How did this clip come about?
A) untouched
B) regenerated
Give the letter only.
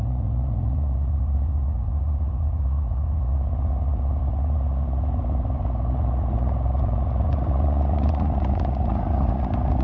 B